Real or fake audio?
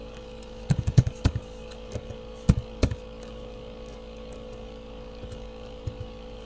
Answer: fake